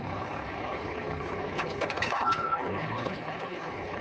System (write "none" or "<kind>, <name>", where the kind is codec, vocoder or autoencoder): codec, HILCodec